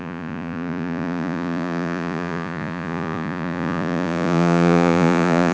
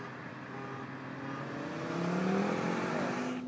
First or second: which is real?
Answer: second